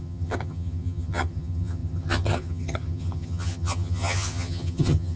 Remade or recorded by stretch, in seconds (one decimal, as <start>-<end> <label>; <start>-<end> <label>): 0.0-5.2 remade